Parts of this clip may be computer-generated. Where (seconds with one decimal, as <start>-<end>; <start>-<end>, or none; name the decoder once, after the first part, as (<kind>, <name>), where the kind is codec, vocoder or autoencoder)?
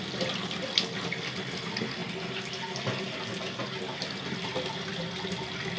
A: none